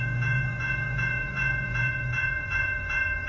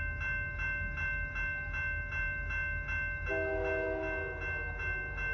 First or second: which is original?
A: second